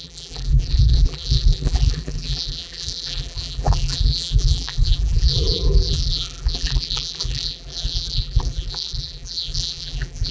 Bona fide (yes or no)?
no